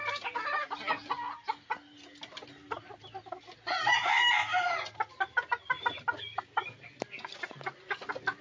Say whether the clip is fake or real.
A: real